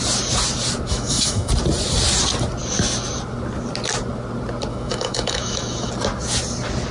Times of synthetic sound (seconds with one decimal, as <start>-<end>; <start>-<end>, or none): 0.9-1.5; 4.7-5.9